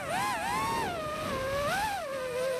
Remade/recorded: recorded